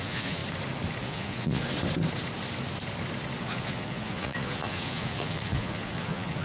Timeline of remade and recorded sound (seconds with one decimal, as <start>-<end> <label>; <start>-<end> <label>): 0.0-0.4 remade; 0.4-1.0 recorded; 1.0-1.6 remade; 1.6-3.4 recorded; 3.4-6.4 remade